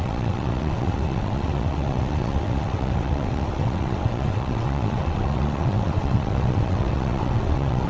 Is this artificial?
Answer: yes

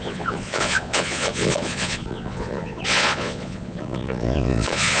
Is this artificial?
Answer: yes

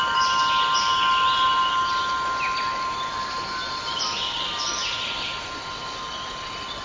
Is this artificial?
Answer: no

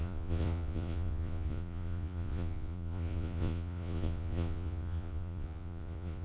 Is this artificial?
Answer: yes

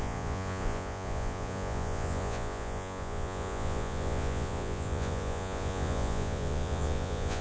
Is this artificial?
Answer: yes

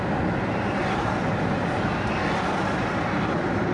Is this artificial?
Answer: no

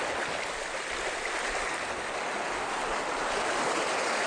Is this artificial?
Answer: no